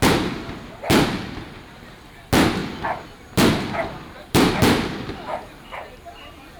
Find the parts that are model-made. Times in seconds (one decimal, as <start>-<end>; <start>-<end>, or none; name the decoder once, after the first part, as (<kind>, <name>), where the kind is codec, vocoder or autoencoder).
none